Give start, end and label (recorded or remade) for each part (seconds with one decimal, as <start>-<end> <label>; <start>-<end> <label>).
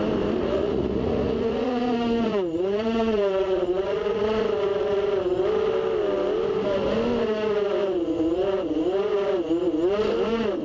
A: 0.0-0.4 recorded; 0.4-1.8 remade; 1.8-2.3 recorded; 2.3-4.4 remade; 4.4-10.6 recorded